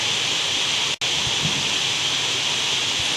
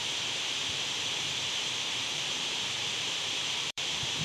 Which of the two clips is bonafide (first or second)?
first